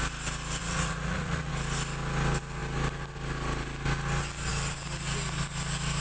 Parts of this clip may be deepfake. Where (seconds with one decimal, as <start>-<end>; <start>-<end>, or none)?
0.6-1.5